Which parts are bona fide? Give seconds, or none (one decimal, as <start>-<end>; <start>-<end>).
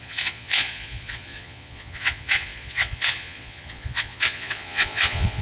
none